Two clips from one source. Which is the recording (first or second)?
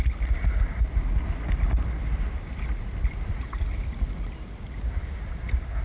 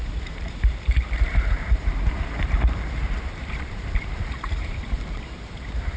first